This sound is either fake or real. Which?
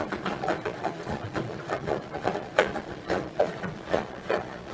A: fake